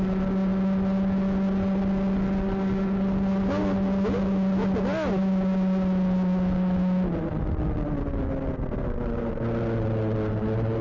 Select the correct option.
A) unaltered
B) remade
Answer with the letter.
A